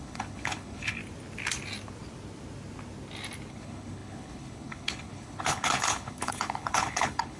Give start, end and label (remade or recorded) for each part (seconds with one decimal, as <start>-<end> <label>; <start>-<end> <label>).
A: 0.0-1.0 remade; 1.0-3.5 recorded; 3.5-7.4 remade